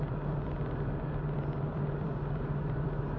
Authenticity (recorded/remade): remade